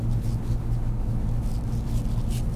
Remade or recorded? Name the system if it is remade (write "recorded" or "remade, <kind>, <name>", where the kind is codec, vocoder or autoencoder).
recorded